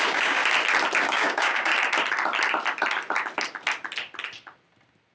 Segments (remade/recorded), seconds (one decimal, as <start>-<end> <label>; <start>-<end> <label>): 0.0-0.4 remade; 0.4-1.0 recorded; 1.0-1.7 remade; 1.7-5.1 recorded